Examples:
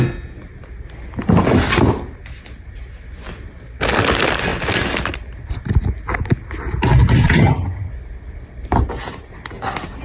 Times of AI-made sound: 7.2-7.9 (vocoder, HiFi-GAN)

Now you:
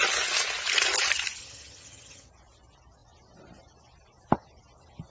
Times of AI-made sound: 1.4-2.3 (vocoder, HiFi-GAN)